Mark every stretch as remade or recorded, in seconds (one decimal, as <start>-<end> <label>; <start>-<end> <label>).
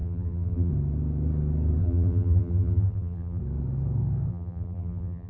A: 0.0-0.7 remade; 0.7-1.8 recorded; 1.8-3.4 remade; 3.4-4.3 recorded; 4.3-5.3 remade